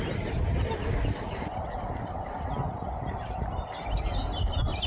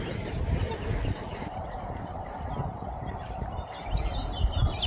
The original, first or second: first